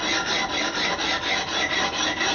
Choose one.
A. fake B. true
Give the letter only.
B